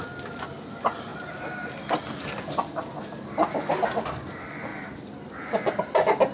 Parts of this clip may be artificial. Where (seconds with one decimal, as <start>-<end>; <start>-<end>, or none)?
none